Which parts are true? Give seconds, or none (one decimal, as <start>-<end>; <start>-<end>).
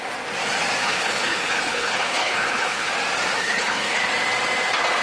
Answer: 0.0-0.8; 2.9-3.4; 4.1-5.0